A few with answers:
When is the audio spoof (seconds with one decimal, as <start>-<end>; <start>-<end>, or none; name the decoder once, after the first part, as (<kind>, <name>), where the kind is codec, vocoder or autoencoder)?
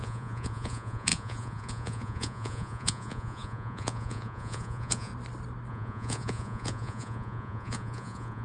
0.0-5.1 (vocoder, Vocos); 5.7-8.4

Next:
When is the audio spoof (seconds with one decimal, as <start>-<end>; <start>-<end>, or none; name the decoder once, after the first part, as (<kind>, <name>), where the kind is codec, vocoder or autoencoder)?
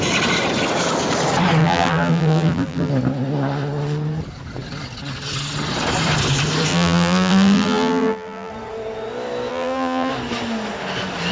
1.6-2.9 (vocoder, BigVGAN v2); 6.7-8.5; 9.5-10.1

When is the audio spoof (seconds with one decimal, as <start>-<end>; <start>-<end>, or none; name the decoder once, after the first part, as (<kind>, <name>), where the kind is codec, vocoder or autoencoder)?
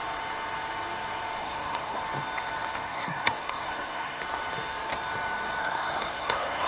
1.4-2.0 (codec, SNAC); 2.8-4.2; 5.6-6.7